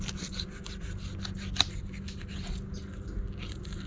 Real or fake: real